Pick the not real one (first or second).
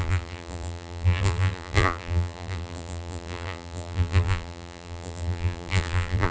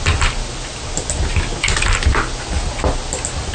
first